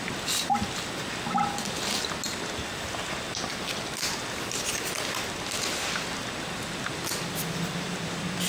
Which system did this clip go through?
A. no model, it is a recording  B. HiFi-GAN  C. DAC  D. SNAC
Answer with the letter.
A